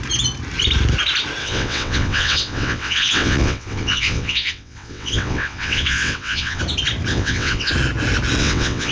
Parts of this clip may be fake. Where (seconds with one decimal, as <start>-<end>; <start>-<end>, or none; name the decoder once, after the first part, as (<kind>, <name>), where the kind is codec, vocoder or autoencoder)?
1.4-6.6 (vocoder, WaveNeXt); 7.1-7.7; 8.4-8.9